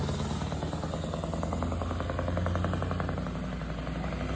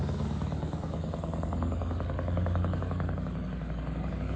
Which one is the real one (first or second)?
first